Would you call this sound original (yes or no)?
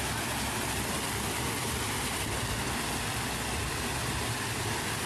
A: yes